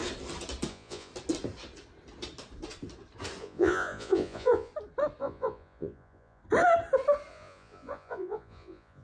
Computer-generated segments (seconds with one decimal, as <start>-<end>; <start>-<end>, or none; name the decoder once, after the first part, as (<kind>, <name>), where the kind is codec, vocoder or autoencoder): 0.7-1.1 (vocoder, Vocos); 3.4-4.7; 5.2-6.4; 7.3-9.0